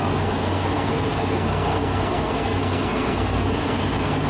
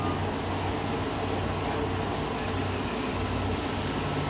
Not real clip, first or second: first